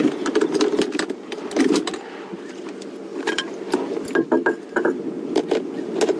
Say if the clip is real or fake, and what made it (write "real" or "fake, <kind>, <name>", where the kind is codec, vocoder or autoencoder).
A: real